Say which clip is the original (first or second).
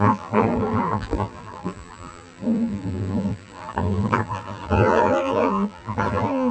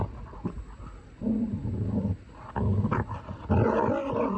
second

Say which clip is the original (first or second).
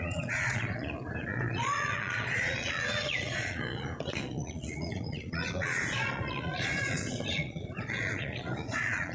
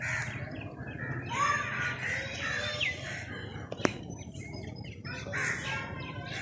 second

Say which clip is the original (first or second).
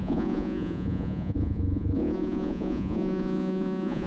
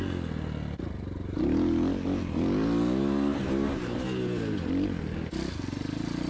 second